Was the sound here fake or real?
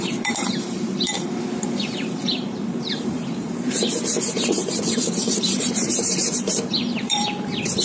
fake